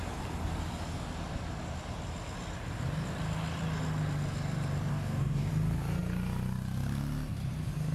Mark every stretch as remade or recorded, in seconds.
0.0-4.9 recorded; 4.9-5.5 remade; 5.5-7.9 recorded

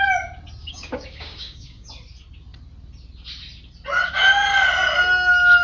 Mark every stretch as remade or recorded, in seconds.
0.0-0.6 recorded; 0.6-1.9 remade; 1.9-5.6 recorded

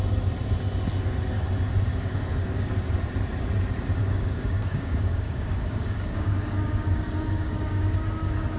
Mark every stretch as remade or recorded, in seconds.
0.0-1.9 recorded; 1.9-2.7 remade; 2.7-4.0 recorded; 4.0-8.6 remade

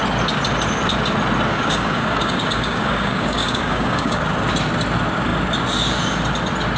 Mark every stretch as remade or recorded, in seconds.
0.0-1.5 recorded; 1.5-4.2 remade; 4.2-6.8 recorded